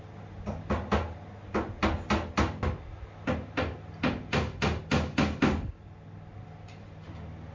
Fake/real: real